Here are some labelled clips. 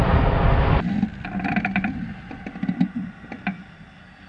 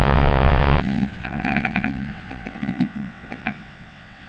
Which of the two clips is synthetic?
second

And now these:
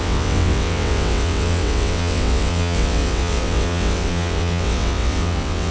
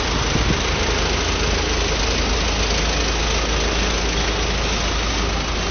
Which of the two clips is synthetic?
first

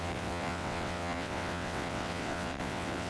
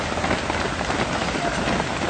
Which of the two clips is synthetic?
first